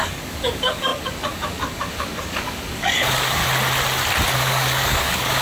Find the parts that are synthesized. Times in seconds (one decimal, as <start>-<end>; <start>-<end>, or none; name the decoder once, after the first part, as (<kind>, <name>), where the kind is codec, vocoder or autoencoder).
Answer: 0.0-3.4 (codec, DAC); 4.4-5.4